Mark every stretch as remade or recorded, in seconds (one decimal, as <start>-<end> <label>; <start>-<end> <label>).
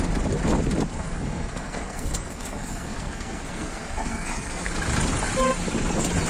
0.0-0.9 recorded; 0.9-4.7 remade; 4.7-6.3 recorded